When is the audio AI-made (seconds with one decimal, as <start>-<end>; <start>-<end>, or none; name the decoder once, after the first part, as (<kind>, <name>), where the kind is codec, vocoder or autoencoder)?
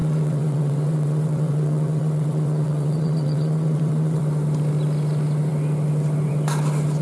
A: 0.0-4.2 (vocoder, WaveNeXt)